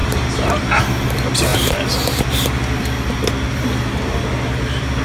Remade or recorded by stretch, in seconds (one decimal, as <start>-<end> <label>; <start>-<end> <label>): 0.0-0.8 remade; 0.8-5.0 recorded